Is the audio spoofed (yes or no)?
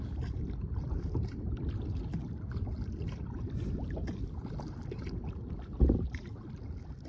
no